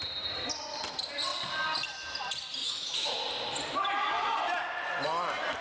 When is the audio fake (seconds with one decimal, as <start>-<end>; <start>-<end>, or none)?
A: 2.6-3.1